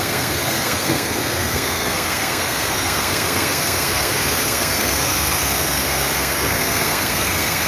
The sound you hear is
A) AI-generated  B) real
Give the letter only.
A